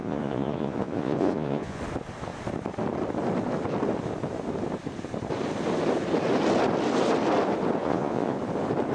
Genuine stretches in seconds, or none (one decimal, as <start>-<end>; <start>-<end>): 1.8-7.8; 8.4-8.9

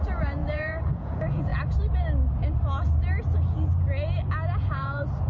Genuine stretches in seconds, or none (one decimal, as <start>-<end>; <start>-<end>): 1.5-4.7